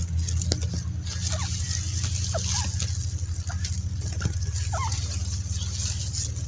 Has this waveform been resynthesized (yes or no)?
no